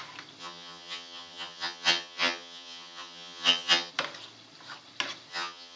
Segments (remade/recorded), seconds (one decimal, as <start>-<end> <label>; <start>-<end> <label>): 0.0-0.4 recorded; 0.4-3.9 remade; 3.9-5.3 recorded; 5.3-5.8 remade